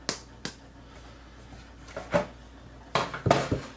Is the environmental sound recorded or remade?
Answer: recorded